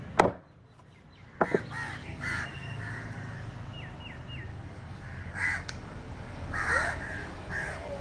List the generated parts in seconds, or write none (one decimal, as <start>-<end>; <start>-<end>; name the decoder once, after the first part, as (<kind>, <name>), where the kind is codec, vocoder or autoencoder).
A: 2.0-3.5 (codec, DAC); 4.5-8.0